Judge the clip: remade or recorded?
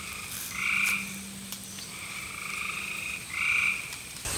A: recorded